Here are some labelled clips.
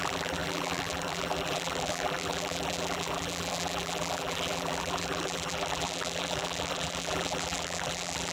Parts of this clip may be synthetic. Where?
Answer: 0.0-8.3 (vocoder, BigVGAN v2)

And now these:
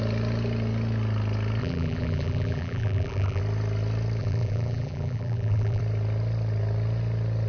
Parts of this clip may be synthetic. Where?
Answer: 1.6-3.4 (vocoder, BigVGAN v2); 4.2-5.8

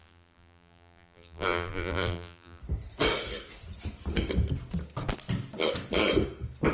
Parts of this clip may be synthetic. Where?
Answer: 0.0-2.6 (vocoder, BigVGAN v2)

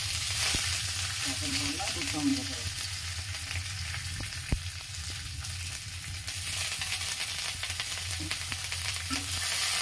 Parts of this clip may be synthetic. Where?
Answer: 0.0-2.3 (vocoder, BigVGAN v2); 5.8-9.8